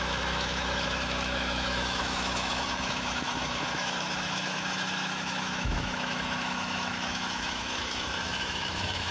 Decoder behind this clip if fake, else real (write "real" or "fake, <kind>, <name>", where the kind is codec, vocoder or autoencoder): fake, autoencoder, DAC-VAE